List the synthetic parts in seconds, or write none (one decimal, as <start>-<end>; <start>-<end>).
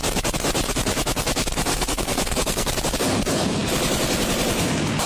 1.7-2.7